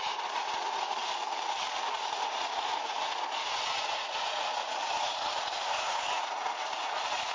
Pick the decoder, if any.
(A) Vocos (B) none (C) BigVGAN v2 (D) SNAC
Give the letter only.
A